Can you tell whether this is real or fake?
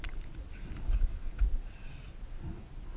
real